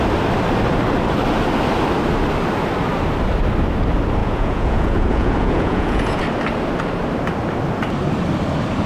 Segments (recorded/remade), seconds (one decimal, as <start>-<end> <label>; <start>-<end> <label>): 0.0-4.2 recorded; 4.2-6.2 remade; 6.2-8.9 recorded